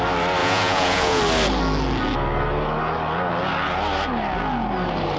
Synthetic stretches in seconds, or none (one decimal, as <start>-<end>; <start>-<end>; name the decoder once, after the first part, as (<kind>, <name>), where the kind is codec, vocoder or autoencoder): 0.4-1.2 (vocoder, Vocos)